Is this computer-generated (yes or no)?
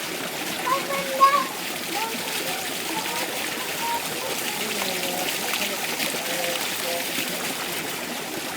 no